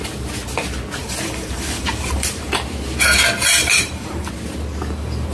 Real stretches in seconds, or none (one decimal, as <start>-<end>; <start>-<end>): 0.0-1.0; 2.5-3.6; 4.3-5.3